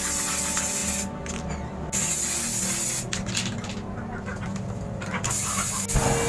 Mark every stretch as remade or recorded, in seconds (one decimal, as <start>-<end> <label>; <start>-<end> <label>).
0.0-6.3 recorded